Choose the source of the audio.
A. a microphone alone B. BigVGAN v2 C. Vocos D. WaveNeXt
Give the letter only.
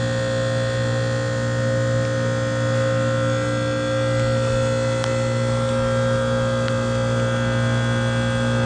A